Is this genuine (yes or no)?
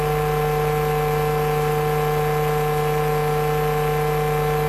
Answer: yes